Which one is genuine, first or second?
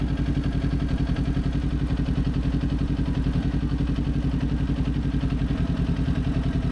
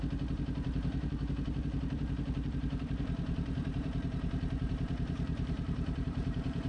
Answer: first